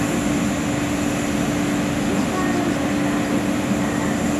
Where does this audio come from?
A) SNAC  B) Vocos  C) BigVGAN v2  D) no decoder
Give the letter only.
D